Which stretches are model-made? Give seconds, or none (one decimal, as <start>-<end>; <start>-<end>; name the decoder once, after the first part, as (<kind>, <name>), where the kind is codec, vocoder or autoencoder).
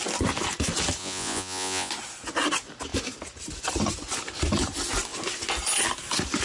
1.0-1.9 (vocoder, Vocos)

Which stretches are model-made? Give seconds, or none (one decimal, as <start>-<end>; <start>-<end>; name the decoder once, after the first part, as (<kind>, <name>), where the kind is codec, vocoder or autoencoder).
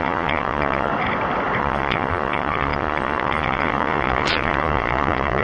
0.0-0.9 (vocoder, Vocos); 1.6-5.4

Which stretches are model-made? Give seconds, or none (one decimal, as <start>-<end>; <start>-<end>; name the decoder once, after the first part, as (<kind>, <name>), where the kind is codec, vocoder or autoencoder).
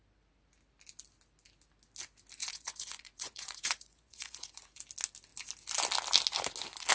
2.4-4.8 (vocoder, Vocos)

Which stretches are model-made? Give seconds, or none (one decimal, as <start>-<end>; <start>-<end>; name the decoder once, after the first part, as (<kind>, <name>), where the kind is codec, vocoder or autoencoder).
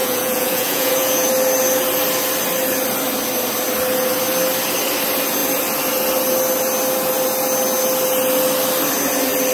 0.0-1.3 (vocoder, Vocos)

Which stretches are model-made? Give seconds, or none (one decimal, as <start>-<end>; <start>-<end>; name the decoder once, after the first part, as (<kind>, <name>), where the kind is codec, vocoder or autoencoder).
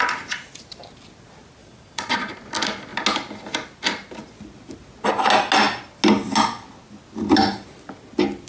1.6-2.3 (vocoder, Vocos)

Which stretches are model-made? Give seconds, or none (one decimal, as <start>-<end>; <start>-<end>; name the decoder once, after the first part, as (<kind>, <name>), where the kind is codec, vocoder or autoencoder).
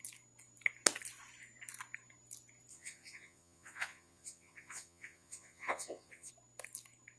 2.7-6.3 (vocoder, Vocos)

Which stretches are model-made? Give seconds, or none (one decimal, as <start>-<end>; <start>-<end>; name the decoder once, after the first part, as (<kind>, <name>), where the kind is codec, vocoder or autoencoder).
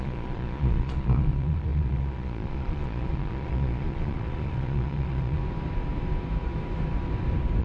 0.0-5.4 (vocoder, Vocos)